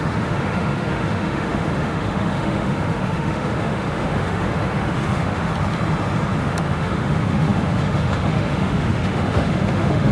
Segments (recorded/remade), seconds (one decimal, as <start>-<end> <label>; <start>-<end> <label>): 0.0-5.5 remade; 5.5-6.4 recorded; 6.4-10.1 remade